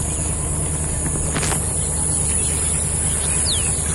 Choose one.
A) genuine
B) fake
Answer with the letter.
A